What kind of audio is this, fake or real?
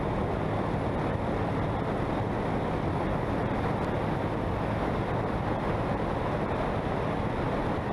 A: real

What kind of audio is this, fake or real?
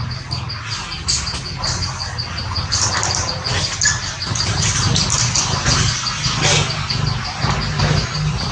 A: real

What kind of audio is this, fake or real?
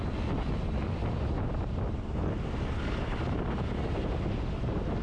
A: real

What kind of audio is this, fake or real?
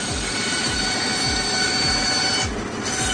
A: fake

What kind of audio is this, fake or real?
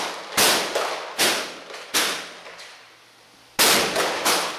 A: real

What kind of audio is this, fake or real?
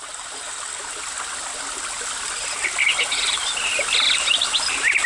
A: real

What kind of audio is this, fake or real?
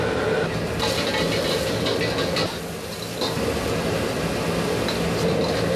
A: real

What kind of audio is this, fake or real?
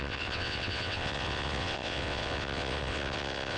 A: fake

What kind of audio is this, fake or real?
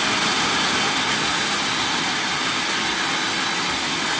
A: real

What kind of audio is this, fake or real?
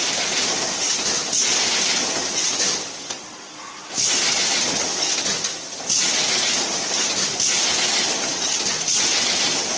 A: real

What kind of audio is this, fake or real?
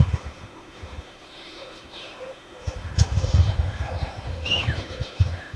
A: fake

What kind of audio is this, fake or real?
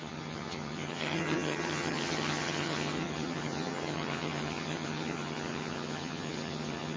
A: fake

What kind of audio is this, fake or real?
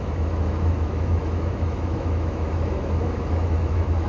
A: fake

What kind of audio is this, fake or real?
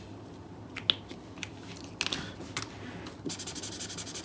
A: real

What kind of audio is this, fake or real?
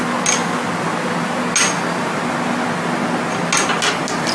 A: real